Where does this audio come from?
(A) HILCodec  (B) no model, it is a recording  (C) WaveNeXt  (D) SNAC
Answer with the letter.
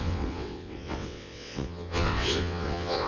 C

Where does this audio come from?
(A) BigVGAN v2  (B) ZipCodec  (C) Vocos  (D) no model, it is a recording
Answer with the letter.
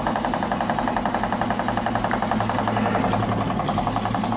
D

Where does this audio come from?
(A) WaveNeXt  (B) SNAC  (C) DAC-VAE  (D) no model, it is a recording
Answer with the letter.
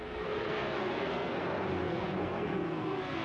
B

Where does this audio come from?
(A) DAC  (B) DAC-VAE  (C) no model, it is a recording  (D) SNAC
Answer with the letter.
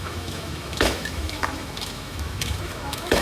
B